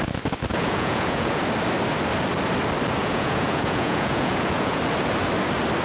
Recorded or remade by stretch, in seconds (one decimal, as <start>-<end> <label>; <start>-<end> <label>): 0.0-0.5 recorded; 0.5-1.4 remade; 1.4-3.0 recorded; 3.0-4.8 remade; 4.8-5.8 recorded